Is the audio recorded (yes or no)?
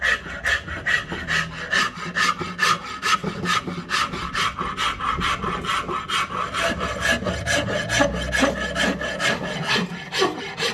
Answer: yes